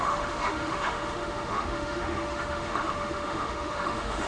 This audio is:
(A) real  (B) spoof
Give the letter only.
B